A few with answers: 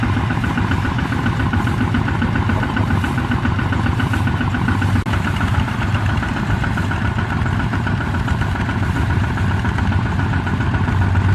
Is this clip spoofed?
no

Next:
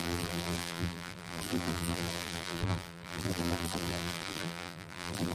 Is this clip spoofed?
yes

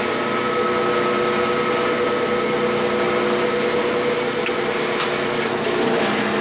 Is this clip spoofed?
no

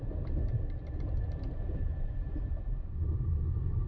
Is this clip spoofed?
yes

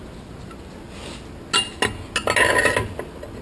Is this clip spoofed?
no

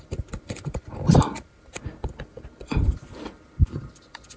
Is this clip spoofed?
yes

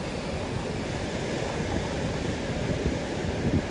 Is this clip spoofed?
no